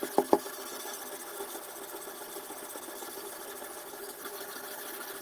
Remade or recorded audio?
recorded